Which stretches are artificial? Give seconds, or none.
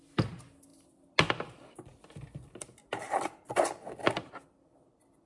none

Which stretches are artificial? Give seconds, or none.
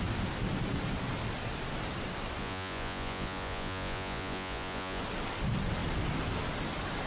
2.4-5.0 (vocoder, Vocos)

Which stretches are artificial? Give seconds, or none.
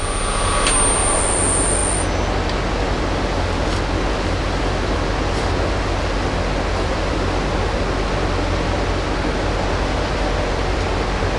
none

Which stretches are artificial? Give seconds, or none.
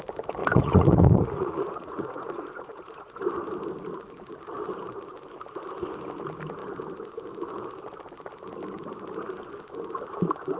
0.4-3.2 (vocoder, Vocos)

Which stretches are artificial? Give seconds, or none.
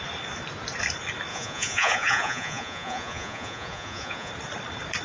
1.3-4.3 (vocoder, Vocos)